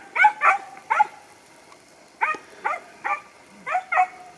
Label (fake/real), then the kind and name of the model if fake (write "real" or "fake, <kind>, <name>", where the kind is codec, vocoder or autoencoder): fake, vocoder, BigVGAN v2